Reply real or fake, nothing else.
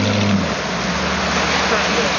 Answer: real